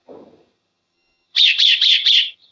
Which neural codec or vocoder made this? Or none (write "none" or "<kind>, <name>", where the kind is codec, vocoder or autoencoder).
vocoder, HiFi-GAN